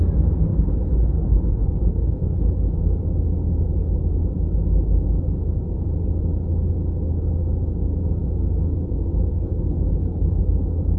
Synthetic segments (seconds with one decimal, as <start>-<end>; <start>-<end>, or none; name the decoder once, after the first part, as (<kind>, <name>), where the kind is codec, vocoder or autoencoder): 0.5-2.8 (codec, HILCodec); 9.3-10.4